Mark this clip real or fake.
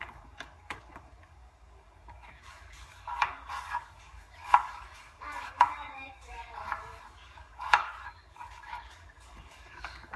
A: fake